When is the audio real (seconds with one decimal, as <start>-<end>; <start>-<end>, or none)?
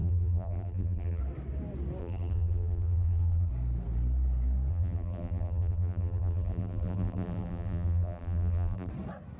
1.2-2.0; 3.5-4.7; 8.9-9.4